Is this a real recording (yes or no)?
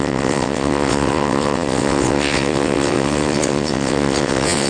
no